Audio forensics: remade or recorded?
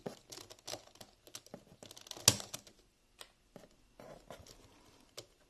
recorded